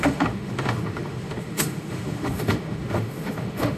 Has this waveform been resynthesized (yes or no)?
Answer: yes